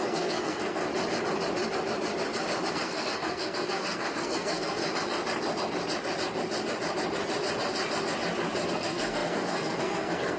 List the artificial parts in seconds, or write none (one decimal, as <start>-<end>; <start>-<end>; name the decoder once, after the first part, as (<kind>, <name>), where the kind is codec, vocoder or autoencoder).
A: 0.0-0.8 (codec, SNAC); 2.7-4.8; 8.7-10.4